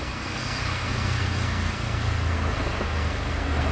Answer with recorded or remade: remade